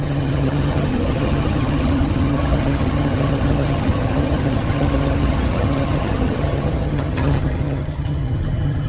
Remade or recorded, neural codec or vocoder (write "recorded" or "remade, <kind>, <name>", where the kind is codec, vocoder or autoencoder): remade, vocoder, HiFi-GAN